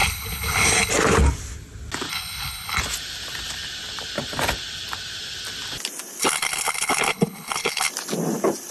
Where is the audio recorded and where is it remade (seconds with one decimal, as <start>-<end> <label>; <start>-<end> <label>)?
0.0-0.9 remade; 0.9-2.1 recorded; 2.1-2.8 remade; 2.8-6.2 recorded; 6.2-7.9 remade; 7.9-8.7 recorded